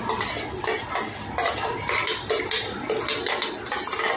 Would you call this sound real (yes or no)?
yes